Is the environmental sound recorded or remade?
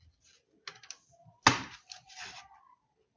recorded